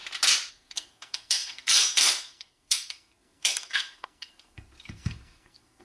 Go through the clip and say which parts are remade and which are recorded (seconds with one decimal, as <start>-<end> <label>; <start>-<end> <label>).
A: 0.0-0.5 recorded; 0.5-5.8 remade